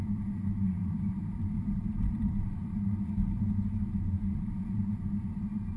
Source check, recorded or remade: remade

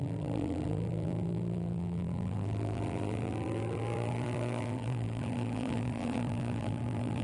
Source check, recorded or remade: remade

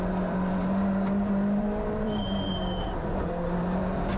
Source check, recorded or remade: remade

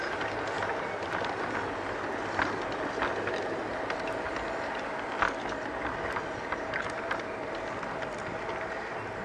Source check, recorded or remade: recorded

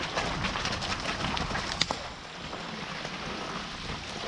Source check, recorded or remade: recorded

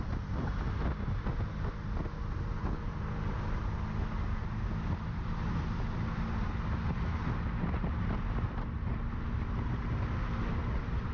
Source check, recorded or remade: recorded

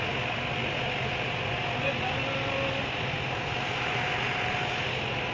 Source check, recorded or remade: recorded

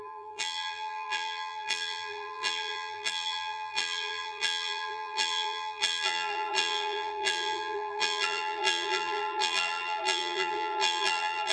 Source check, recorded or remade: remade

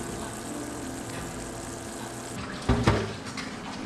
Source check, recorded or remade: recorded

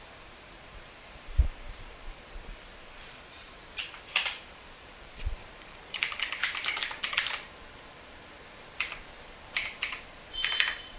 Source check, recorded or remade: remade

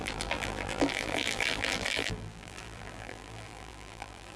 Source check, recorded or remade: remade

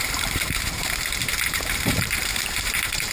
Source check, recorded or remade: remade